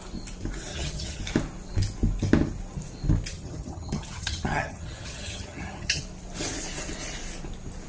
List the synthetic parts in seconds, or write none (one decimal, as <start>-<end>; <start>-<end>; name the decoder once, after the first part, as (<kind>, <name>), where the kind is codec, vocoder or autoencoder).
0.7-1.2 (vocoder, HiFi-GAN); 3.3-6.0